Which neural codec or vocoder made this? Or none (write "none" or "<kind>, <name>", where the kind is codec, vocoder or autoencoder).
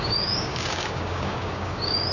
codec, DAC